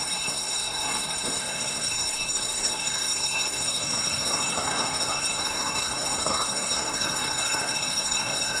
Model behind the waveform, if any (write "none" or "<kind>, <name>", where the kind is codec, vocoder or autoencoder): codec, SNAC